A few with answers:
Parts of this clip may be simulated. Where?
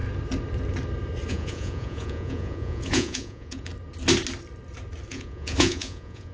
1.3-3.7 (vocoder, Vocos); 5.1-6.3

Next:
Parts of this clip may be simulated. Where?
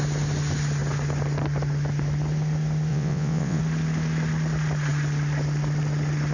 2.9-3.6 (vocoder, WaveNeXt)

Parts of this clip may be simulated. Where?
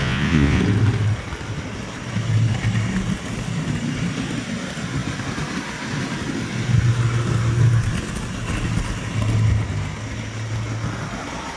0.0-0.6 (vocoder, Vocos)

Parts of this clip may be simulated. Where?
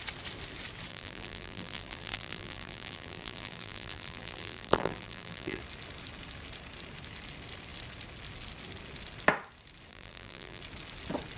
0.9-5.6 (vocoder, BigVGAN v2); 9.9-10.6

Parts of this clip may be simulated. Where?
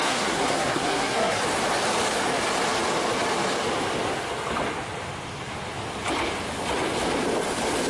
0.0-1.4 (codec, SNAC)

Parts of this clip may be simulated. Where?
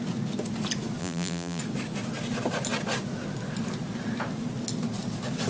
1.0-1.6 (vocoder, BigVGAN v2)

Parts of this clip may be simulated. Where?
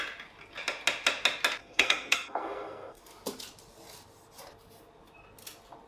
1.6-3.0 (codec, SNAC)